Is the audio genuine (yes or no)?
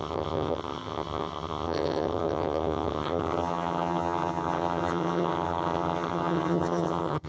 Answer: no